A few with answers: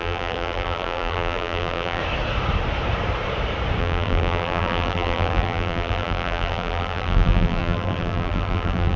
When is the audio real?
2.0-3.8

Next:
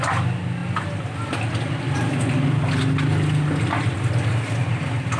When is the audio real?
0.0-4.3